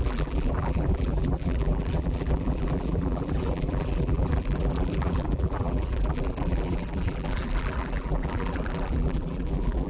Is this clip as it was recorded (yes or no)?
no